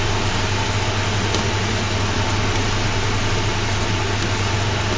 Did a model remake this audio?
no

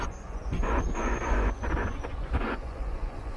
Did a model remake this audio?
yes